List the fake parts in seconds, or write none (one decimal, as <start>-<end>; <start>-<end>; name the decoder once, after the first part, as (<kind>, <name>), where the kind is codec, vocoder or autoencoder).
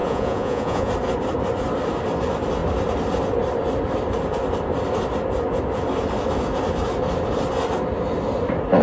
0.0-0.9 (vocoder, Vocos)